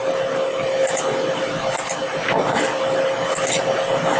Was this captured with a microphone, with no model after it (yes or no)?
yes